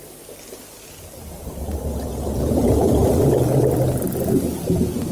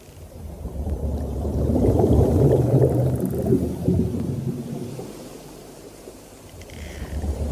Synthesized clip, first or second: second